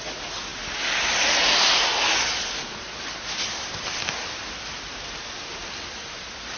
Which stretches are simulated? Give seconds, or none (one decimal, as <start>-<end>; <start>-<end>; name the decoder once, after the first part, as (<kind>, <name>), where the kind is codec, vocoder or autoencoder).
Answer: none

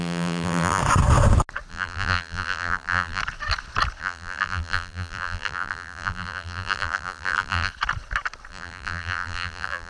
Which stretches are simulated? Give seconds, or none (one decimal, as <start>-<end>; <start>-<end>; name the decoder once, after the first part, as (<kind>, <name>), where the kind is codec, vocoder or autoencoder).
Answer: 0.0-0.8 (vocoder, BigVGAN v2); 1.7-3.2; 4.0-7.7; 8.5-9.9

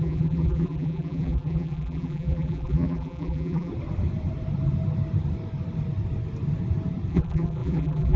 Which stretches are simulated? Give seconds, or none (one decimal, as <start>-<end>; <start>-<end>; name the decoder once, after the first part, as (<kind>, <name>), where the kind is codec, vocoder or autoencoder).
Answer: 0.0-3.7 (vocoder, BigVGAN v2); 7.1-8.2

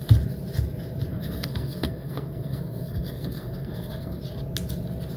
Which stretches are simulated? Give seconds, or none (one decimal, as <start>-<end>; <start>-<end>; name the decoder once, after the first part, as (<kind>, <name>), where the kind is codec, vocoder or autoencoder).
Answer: 1.1-4.2 (codec, SNAC)

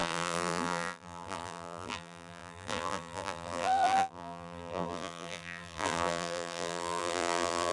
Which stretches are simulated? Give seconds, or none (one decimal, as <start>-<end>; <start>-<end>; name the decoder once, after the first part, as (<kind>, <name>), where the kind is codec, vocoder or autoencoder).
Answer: 0.0-7.7 (vocoder, BigVGAN v2)